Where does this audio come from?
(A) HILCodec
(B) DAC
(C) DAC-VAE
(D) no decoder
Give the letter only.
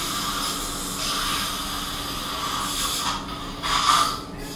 D